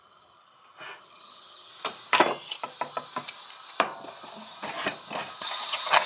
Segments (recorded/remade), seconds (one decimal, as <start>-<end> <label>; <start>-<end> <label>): 0.0-0.4 remade; 0.4-1.0 recorded; 1.0-1.7 remade; 1.7-5.4 recorded; 5.4-6.1 remade